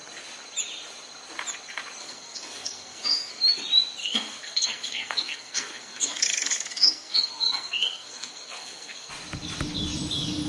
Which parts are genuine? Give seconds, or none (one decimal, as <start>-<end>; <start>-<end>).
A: 0.0-2.0; 3.4-4.0; 9.1-10.5